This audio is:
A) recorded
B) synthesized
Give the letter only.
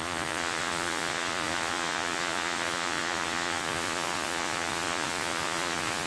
B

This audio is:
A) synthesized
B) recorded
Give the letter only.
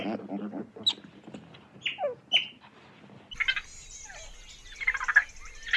B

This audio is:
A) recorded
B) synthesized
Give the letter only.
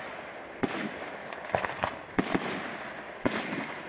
A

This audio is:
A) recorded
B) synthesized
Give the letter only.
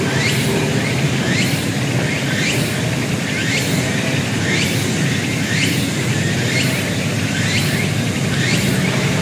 A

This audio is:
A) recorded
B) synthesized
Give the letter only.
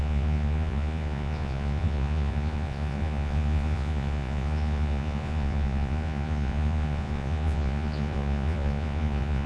B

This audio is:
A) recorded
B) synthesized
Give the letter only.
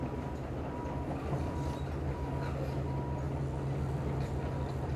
A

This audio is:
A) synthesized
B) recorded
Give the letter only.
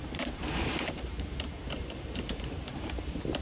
A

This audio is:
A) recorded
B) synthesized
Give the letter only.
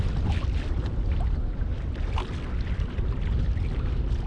A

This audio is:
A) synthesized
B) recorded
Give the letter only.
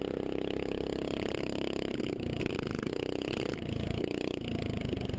A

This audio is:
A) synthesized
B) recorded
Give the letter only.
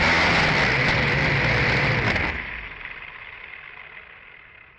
B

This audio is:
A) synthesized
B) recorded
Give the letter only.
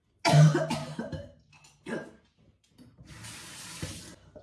B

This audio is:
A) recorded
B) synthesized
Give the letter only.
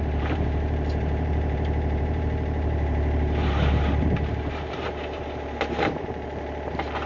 B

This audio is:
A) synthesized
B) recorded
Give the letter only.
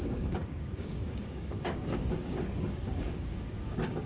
A